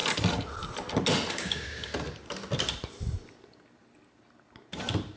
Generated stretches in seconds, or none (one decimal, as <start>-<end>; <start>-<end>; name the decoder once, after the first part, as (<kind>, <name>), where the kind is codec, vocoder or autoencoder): 1.3-1.9 (codec, DAC)